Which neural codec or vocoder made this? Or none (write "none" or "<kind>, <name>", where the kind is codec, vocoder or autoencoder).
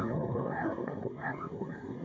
codec, SNAC